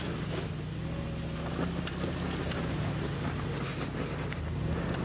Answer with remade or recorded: recorded